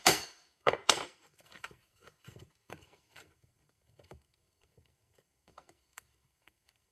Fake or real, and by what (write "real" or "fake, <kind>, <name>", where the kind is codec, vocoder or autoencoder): fake, codec, SNAC